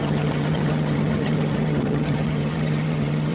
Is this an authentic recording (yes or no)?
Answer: no